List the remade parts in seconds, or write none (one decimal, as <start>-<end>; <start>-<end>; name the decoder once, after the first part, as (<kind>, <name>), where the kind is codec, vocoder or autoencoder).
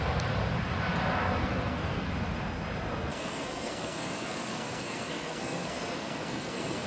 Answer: 1.4-2.1 (codec, SNAC); 3.1-6.9